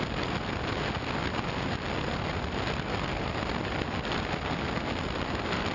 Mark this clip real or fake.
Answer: real